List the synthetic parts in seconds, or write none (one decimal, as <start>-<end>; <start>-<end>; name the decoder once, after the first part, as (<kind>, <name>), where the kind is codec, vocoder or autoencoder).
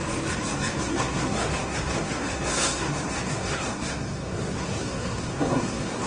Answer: 0.8-6.1 (codec, SNAC)